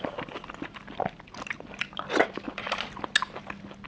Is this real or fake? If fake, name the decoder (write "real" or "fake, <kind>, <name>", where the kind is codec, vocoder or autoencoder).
real